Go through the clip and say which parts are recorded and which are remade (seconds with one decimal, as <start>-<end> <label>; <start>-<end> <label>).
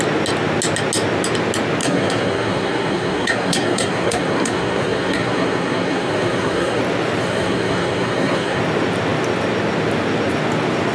0.0-1.8 recorded; 1.8-6.8 remade; 6.8-7.2 recorded; 7.2-8.6 remade; 8.6-10.9 recorded